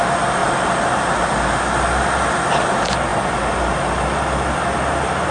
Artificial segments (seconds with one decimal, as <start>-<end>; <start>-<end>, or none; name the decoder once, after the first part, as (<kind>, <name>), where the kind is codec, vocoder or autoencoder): none